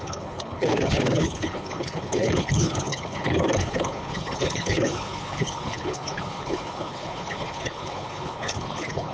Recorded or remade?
remade